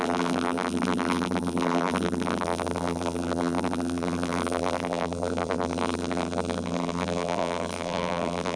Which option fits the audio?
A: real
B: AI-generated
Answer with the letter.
B